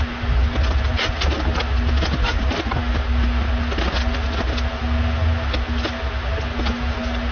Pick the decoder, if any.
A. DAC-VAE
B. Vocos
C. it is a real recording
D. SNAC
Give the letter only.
C